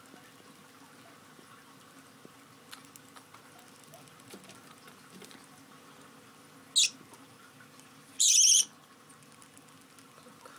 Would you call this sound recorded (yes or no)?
yes